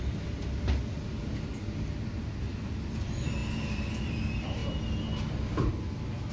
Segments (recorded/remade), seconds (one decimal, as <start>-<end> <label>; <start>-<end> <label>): 0.0-6.3 recorded